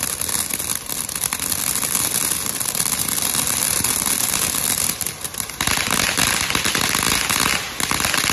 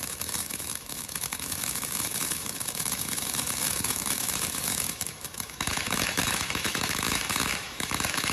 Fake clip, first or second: second